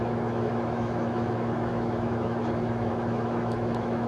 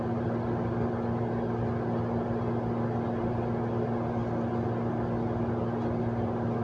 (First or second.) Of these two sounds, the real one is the second